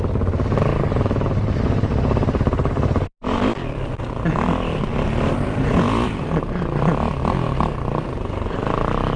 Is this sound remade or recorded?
recorded